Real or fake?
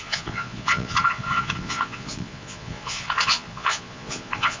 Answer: fake